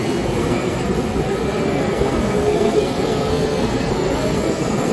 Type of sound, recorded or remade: remade